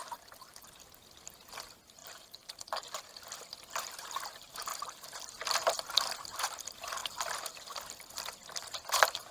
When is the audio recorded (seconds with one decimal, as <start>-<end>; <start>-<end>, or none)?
0.0-2.0; 3.0-4.7; 5.3-9.3